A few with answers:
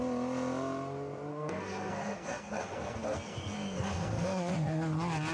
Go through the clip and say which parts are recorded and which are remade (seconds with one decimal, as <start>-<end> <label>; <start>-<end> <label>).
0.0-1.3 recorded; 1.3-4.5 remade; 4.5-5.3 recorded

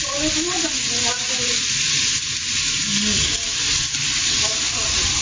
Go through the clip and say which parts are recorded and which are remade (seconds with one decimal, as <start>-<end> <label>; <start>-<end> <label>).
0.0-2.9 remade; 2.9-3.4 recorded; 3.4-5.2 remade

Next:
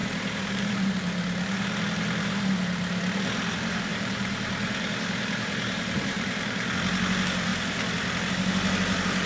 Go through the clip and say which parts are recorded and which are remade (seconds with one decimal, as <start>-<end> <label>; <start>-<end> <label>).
0.0-1.0 remade; 1.0-3.9 recorded; 3.9-6.7 remade; 6.7-9.3 recorded